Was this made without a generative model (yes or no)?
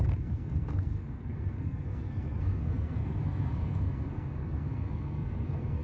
no